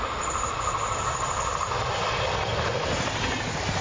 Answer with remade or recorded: recorded